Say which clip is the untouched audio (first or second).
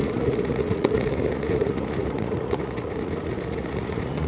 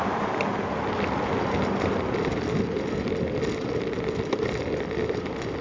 second